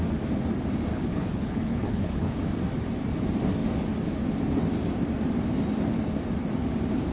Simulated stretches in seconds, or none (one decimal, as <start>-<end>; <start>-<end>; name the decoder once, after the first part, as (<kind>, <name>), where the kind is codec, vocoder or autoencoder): 0.9-2.4 (codec, HILCodec)